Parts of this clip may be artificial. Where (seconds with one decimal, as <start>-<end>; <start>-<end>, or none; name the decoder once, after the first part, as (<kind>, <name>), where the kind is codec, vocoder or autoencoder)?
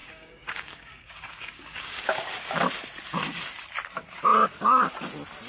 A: 0.0-2.7 (codec, DAC)